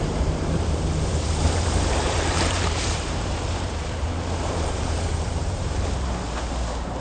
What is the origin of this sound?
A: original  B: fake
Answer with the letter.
B